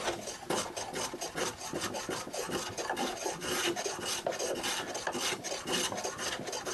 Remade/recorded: recorded